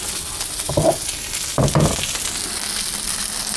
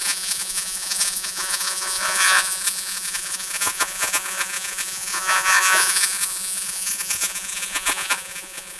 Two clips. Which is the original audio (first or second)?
first